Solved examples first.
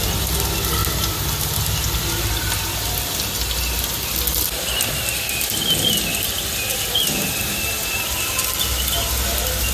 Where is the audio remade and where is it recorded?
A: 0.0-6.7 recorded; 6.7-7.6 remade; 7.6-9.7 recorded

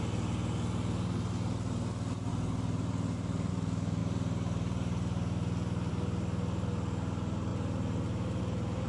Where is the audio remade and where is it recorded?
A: 0.0-8.9 recorded

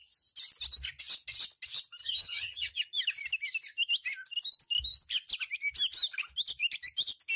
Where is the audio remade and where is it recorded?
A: 0.0-2.0 recorded; 2.0-2.8 remade; 2.8-7.4 recorded